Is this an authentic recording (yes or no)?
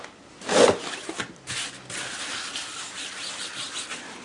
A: yes